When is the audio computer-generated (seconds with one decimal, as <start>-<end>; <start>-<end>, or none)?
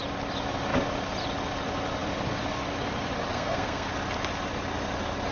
3.3-3.9